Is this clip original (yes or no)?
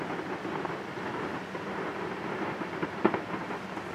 yes